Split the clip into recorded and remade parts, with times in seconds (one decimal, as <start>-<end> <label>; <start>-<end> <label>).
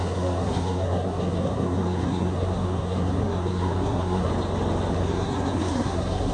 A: 0.0-4.3 remade; 4.3-4.9 recorded; 4.9-6.3 remade